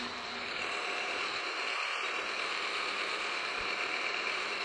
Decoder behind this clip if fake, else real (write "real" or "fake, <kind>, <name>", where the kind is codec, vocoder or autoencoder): fake, vocoder, BigVGAN v2